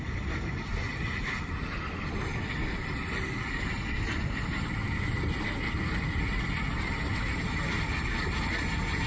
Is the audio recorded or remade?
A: recorded